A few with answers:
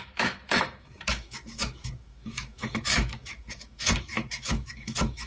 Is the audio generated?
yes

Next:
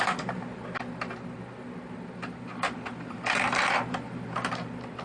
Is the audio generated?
no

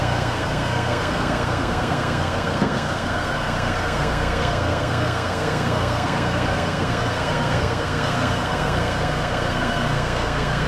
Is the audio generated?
yes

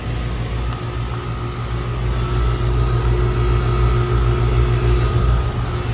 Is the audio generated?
no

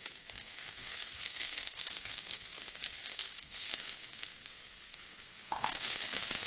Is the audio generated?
yes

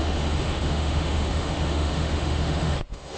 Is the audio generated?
yes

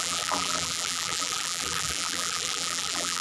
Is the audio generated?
yes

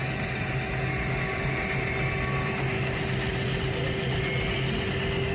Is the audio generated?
no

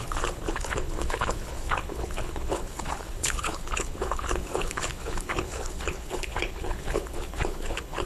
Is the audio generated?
yes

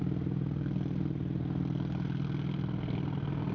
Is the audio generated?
no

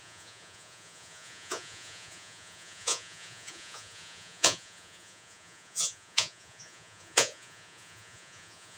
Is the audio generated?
yes